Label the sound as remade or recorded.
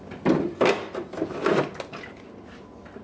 recorded